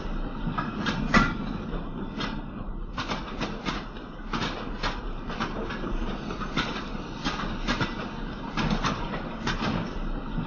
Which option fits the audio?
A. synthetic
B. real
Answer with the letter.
B